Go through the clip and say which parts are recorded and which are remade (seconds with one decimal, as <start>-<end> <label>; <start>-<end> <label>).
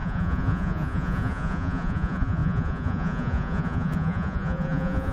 0.0-5.1 remade